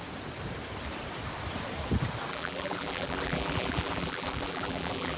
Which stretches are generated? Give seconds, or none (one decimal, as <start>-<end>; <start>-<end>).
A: 2.3-5.2